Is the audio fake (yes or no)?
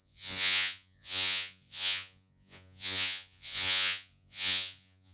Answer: yes